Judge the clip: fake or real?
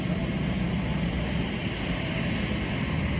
real